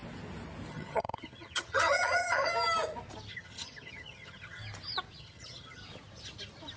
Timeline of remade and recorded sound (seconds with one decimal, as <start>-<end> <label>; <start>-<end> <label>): 0.0-0.7 recorded; 0.7-2.5 remade; 2.5-3.3 recorded; 3.3-4.6 remade; 4.6-5.2 recorded; 5.2-5.8 remade; 5.8-6.8 recorded